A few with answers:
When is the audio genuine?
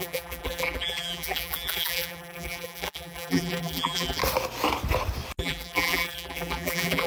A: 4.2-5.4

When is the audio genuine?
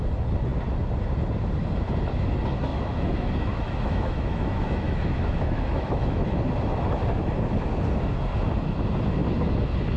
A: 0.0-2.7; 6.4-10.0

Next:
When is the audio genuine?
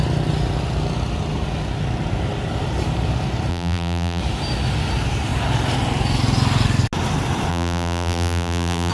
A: 0.0-3.5; 4.2-7.5